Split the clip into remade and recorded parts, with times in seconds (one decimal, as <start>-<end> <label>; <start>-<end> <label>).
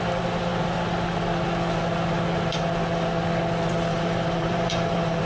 0.0-3.9 recorded; 3.9-5.2 remade